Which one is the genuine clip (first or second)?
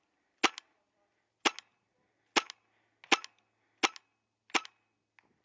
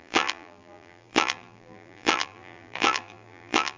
first